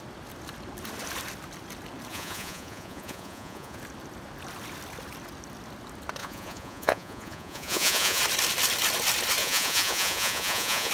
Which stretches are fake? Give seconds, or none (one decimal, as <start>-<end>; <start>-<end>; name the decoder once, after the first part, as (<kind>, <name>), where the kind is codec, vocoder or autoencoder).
2.1-3.8 (vocoder, Vocos); 6.2-8.2; 9.4-10.9